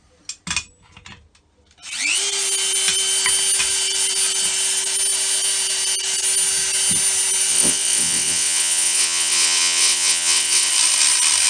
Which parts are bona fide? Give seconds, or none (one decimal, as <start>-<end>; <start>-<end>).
0.0-7.5; 10.7-11.5